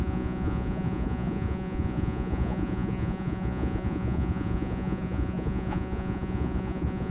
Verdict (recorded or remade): remade